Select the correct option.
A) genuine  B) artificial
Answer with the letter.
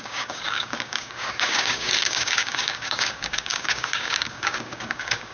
B